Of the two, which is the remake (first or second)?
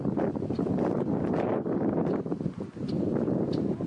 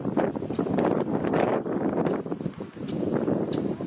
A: second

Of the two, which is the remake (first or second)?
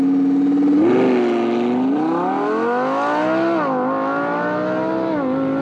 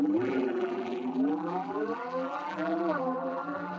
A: second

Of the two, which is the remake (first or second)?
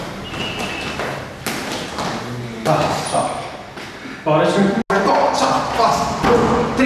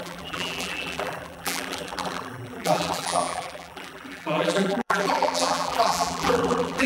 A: second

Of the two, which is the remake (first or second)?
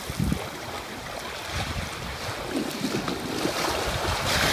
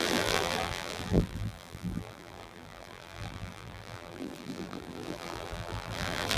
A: second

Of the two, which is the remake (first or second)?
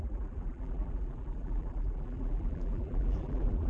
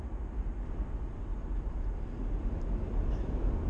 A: first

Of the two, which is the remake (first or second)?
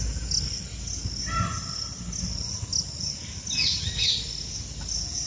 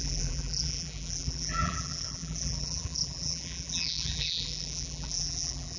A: second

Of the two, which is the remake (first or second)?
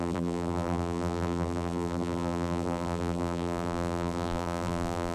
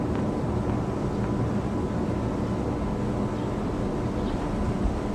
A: first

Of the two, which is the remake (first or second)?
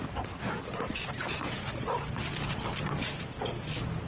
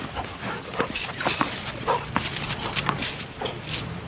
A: second